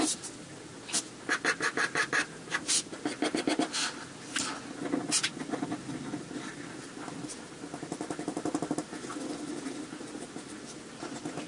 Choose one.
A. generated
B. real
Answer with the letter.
B